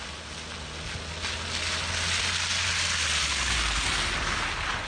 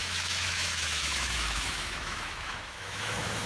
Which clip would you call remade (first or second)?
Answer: second